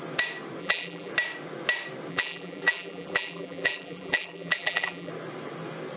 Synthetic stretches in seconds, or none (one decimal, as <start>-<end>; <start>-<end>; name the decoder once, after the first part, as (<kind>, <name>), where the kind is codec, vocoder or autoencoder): 0.6-1.1 (vocoder, BigVGAN v2); 2.1-5.1